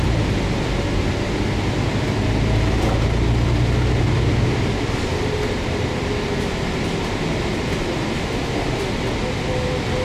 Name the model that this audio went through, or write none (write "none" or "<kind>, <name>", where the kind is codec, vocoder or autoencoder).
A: none